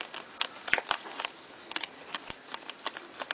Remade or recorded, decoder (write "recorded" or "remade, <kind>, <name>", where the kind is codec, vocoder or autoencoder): recorded